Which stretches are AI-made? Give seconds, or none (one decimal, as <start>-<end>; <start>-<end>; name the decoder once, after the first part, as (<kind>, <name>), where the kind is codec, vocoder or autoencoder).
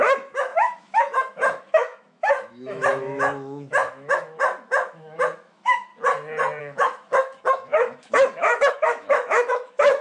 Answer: 0.0-5.9 (autoencoder, DAC-VAE); 6.6-10.0